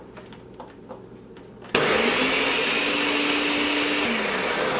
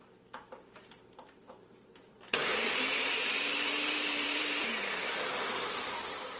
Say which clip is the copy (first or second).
second